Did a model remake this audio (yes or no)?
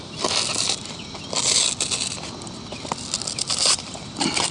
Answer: yes